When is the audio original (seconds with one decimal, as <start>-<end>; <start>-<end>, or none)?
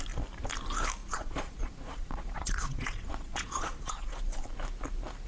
0.0-1.0; 4.2-5.3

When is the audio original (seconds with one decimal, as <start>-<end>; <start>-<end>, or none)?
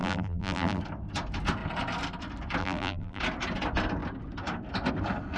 0.8-2.6; 3.2-5.4